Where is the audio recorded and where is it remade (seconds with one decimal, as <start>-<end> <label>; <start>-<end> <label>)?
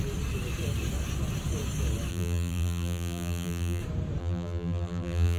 0.0-2.1 recorded; 2.1-3.8 remade; 3.8-4.2 recorded; 4.2-5.4 remade